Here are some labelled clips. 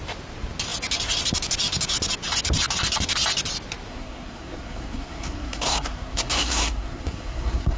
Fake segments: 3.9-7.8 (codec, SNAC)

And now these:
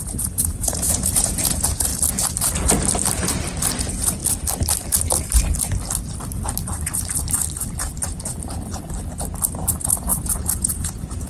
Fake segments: 0.0-1.9 (vocoder, Vocos); 3.8-4.2; 9.4-11.3

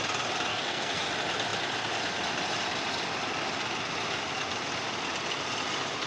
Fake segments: 0.5-1.1 (codec, SNAC)

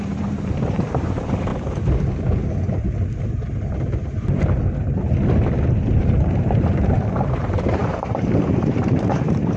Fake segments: 0.0-1.5 (vocoder, BigVGAN v2); 6.0-9.6

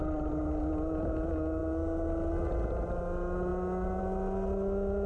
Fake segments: none

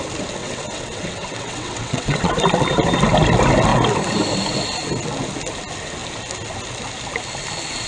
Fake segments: 0.4-2.3 (vocoder, WaveNeXt)

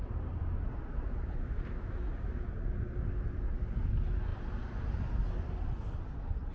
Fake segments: none

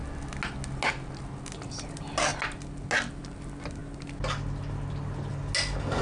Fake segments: none